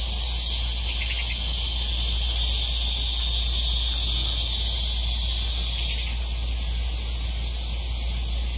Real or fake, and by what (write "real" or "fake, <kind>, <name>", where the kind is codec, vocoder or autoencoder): real